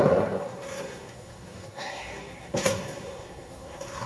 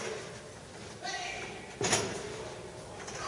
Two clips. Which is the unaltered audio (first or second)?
second